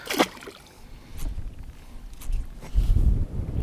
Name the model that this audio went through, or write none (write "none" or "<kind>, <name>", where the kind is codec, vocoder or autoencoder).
none